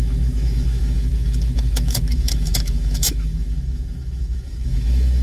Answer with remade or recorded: remade